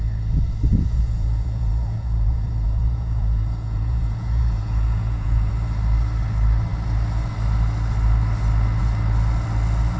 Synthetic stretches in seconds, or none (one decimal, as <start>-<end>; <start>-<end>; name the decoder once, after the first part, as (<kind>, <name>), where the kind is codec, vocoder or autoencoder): 0.7-5.5 (vocoder, Vocos)